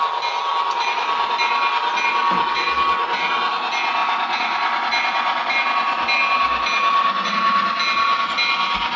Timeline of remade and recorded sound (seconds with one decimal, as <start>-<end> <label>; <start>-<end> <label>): 0.0-9.0 recorded